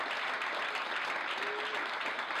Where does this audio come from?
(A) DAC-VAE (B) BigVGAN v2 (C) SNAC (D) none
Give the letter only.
D